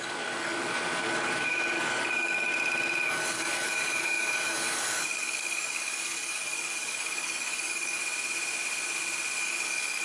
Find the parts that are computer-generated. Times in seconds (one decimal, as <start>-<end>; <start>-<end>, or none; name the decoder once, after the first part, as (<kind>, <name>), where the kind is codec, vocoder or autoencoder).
0.0-2.5 (codec, DAC); 3.1-8.0; 9.4-10.0